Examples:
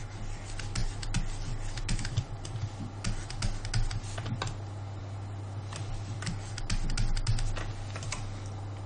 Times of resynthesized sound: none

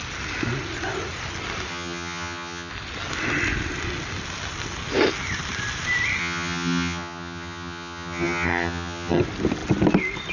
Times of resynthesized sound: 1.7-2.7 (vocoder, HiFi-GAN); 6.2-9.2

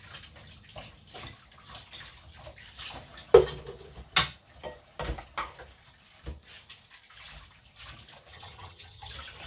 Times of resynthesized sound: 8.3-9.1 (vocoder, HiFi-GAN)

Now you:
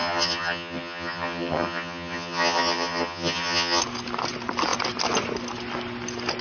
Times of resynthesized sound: 0.0-3.8 (vocoder, HiFi-GAN)

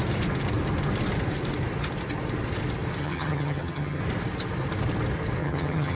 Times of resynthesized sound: 3.0-4.0 (vocoder, HiFi-GAN); 5.4-6.0

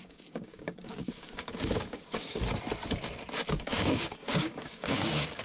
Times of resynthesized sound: 0.0-2.4 (codec, DAC); 3.7-5.4

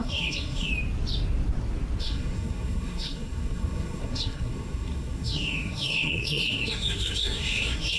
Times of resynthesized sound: 0.0-0.7 (codec, SNAC); 2.0-8.0

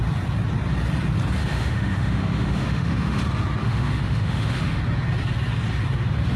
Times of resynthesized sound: 1.4-3.2 (autoencoder, DAC-VAE); 3.6-4.8